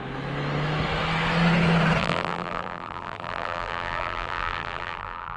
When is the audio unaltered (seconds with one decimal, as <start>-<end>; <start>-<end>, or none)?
0.0-2.0